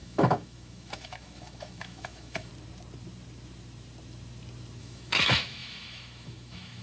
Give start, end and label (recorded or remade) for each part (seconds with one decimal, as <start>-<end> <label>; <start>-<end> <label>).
0.0-2.5 remade; 2.5-4.8 recorded; 4.8-6.8 remade